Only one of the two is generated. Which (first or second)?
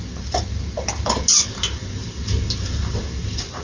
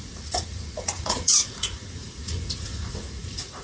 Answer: second